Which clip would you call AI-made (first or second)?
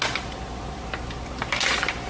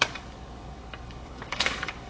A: second